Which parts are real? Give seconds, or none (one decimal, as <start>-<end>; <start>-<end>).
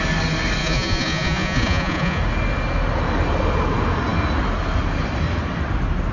0.0-0.6; 2.2-6.1